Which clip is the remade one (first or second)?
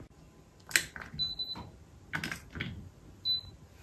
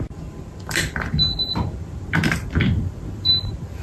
second